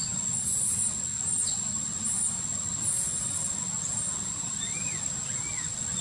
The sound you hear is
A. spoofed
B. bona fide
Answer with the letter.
B